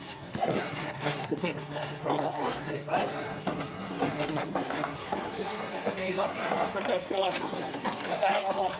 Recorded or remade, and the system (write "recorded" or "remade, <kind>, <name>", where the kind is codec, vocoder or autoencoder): remade, codec, SNAC